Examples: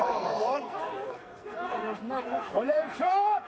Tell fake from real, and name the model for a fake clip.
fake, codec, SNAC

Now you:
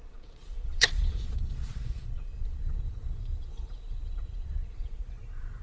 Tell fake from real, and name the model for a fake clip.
fake, vocoder, Vocos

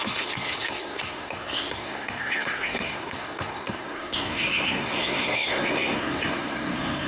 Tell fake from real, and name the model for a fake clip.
fake, codec, SNAC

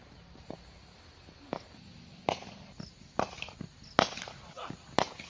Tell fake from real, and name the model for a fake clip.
real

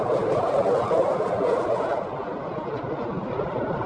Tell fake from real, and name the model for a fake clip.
real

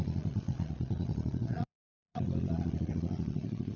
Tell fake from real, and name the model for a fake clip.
fake, vocoder, Vocos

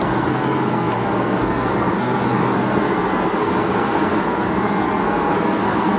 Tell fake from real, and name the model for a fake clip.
fake, codec, SNAC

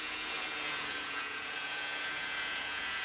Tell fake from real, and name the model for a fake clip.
fake, vocoder, Vocos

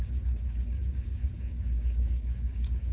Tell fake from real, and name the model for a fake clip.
fake, codec, DAC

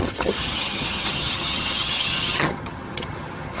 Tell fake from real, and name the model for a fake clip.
fake, vocoder, HiFi-GAN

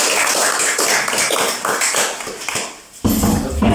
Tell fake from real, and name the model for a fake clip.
real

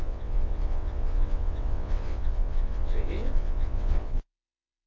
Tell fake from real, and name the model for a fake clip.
fake, vocoder, WaveNeXt